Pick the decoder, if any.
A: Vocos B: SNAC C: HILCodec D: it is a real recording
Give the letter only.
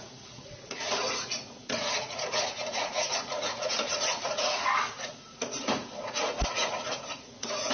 A